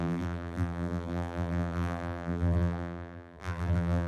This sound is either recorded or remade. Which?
remade